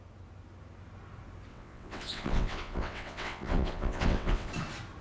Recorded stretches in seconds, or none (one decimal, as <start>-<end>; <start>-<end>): 0.0-1.5; 4.5-5.0